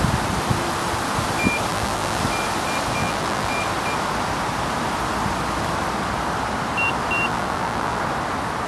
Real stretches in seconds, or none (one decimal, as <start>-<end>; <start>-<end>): 0.0-1.7; 2.2-3.0; 3.5-7.3; 8.0-8.7